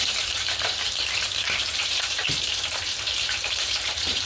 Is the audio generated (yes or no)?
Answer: yes